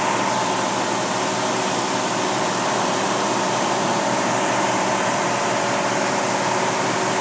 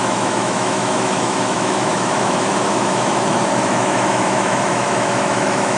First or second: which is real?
first